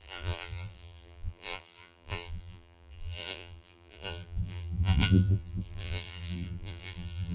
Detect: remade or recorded remade